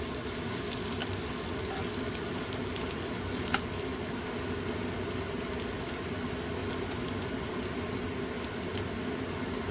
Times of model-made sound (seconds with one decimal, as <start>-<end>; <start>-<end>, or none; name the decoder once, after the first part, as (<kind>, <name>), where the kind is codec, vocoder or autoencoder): none